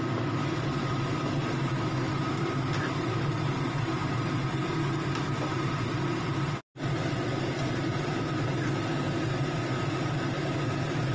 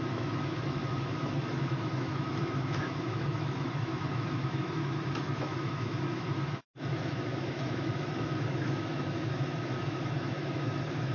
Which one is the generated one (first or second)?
second